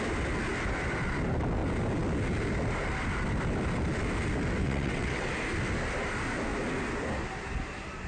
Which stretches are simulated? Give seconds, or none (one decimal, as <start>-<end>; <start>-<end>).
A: 4.6-5.3